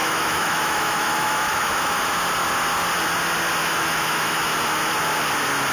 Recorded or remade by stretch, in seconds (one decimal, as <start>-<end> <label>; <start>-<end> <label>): 0.0-2.1 remade; 2.1-3.6 recorded; 3.6-4.4 remade; 4.4-5.7 recorded